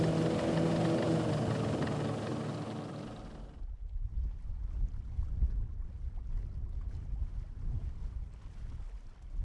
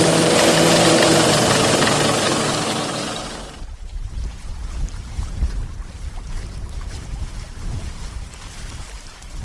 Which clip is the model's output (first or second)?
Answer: second